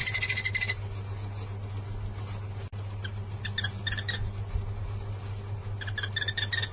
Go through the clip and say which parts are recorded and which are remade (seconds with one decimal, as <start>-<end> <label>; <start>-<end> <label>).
0.0-6.7 recorded